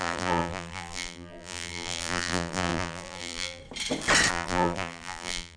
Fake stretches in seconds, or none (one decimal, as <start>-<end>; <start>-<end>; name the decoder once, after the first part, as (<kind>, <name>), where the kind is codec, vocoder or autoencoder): 0.0-3.6 (vocoder, BigVGAN v2); 4.3-5.6